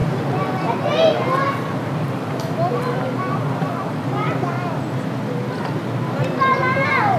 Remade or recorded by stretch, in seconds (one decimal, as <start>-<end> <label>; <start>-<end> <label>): 0.0-7.2 recorded